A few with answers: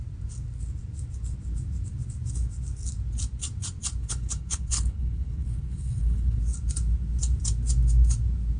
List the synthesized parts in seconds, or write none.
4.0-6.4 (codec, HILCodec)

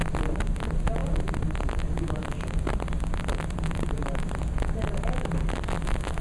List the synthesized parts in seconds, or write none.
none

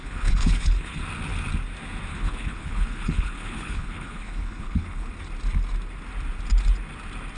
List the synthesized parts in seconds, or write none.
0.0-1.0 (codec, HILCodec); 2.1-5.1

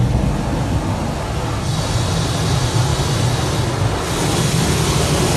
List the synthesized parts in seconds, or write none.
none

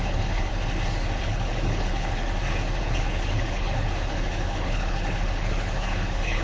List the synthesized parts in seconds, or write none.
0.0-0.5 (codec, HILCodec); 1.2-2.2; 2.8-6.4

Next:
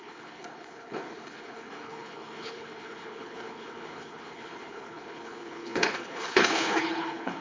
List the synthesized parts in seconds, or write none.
0.0-7.4 (codec, HILCodec)